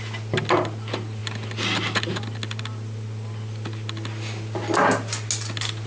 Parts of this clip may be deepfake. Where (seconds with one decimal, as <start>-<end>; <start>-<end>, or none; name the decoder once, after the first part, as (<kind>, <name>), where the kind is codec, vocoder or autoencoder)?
none